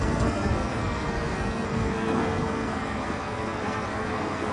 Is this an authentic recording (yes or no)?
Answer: no